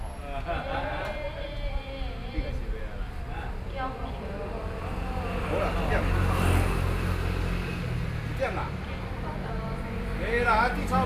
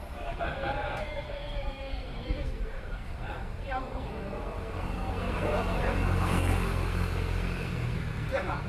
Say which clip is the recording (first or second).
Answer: first